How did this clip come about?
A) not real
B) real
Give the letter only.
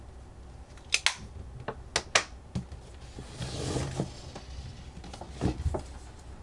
B